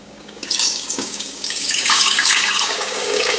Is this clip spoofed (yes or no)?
yes